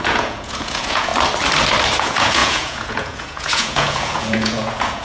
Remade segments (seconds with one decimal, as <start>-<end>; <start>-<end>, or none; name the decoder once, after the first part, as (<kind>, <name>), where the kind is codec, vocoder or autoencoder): 0.0-1.1 (vocoder, Vocos); 2.0-5.0